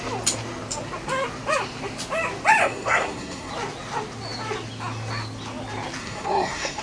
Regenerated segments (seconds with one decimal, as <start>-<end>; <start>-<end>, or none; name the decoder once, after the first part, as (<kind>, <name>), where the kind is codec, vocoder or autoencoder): 2.6-3.5 (codec, SNAC); 6.0-6.8